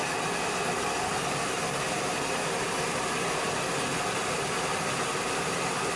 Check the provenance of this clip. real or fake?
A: real